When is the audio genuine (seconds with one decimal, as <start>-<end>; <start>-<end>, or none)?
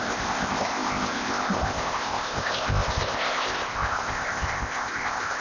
none